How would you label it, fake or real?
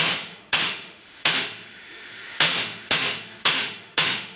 fake